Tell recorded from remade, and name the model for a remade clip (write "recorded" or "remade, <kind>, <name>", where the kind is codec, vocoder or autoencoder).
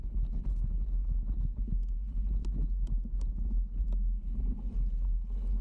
recorded